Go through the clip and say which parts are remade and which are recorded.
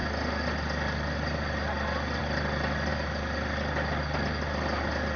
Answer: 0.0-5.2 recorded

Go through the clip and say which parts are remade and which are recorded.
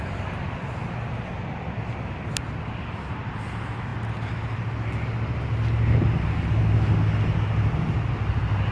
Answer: 0.0-8.7 recorded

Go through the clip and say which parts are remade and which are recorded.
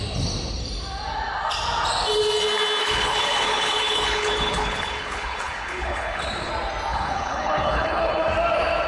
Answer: 0.0-2.8 recorded; 2.8-6.5 remade; 6.5-6.9 recorded; 6.9-8.3 remade; 8.3-8.9 recorded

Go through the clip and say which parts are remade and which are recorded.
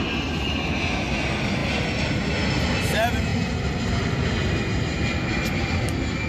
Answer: 0.0-6.3 recorded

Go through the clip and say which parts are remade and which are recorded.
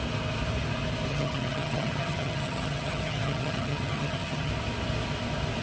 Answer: 0.0-1.1 recorded; 1.1-4.5 remade; 4.5-5.6 recorded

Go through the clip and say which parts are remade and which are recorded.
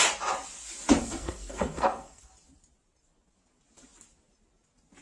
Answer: 0.0-1.0 recorded; 1.0-2.3 remade; 2.3-5.0 recorded